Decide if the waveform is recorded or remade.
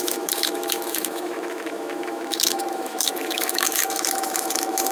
remade